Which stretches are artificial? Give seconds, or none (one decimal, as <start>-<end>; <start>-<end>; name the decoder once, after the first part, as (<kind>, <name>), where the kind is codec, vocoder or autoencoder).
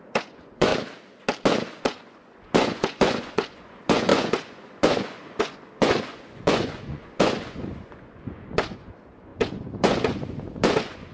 0.0-0.7 (vocoder, Vocos); 1.8-11.1